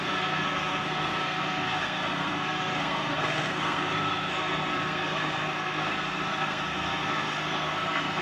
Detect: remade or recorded remade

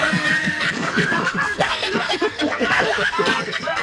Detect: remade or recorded remade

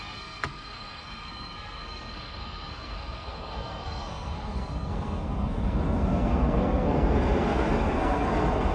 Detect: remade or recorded remade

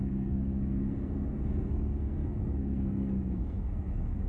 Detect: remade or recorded remade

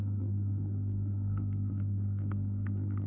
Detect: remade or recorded remade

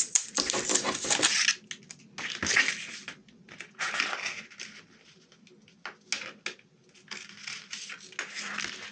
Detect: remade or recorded recorded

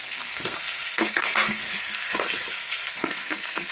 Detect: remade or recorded remade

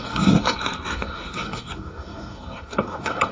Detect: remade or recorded remade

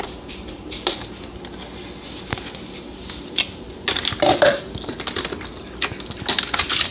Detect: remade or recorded recorded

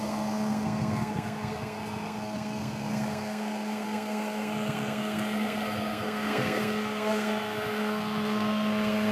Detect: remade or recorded remade